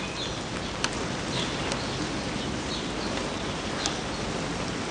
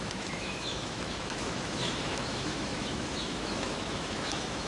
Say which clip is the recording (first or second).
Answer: first